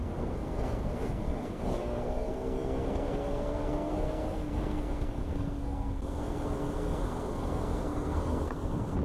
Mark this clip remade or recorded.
remade